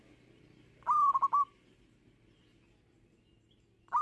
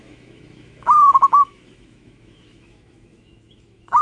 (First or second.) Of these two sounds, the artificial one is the second